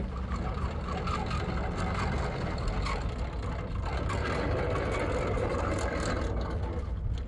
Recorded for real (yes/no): yes